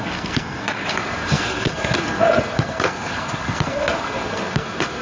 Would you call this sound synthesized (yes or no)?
yes